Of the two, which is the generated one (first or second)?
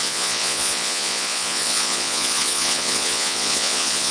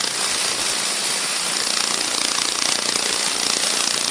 first